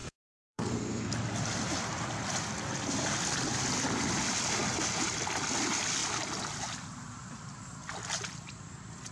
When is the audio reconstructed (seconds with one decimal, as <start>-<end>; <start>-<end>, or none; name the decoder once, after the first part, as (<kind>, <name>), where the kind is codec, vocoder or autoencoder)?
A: 0.0-1.1 (codec, SNAC)